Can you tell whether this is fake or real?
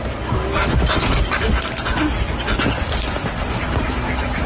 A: real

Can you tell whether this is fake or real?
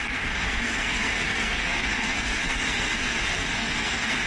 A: fake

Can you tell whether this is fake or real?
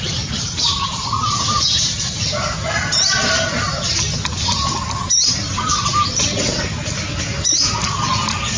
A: real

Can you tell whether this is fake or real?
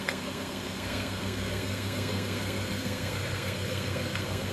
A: fake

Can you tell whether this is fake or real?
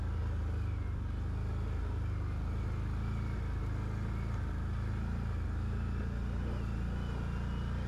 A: real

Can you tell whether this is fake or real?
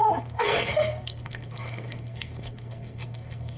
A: fake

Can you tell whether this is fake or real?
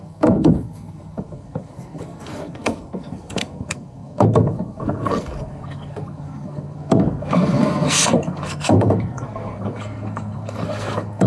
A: fake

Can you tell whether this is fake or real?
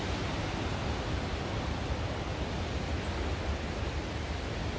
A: real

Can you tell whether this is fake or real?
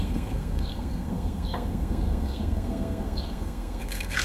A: fake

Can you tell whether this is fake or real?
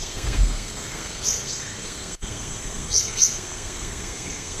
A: fake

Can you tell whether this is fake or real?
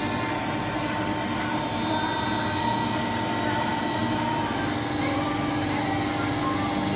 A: real